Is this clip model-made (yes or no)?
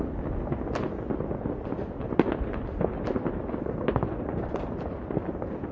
no